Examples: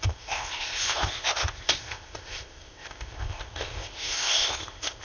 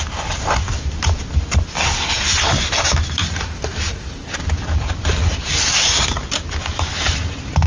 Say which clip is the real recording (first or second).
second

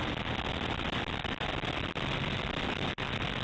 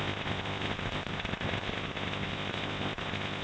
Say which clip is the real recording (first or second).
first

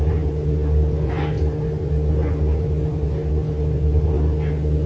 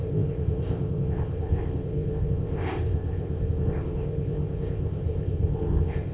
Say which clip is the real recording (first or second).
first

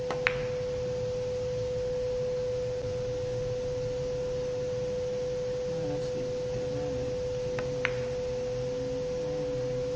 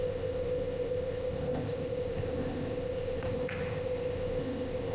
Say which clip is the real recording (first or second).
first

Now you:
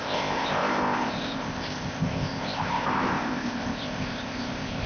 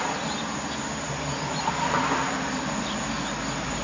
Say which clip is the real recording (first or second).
second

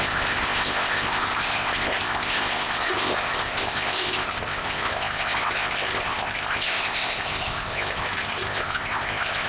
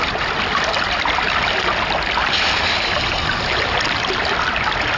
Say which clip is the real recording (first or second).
second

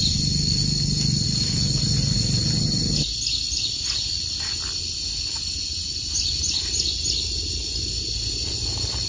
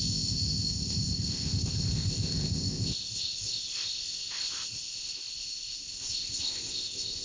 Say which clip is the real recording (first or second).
first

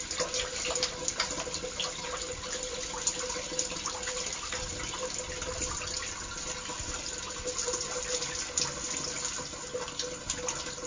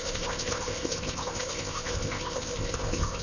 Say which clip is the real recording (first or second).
first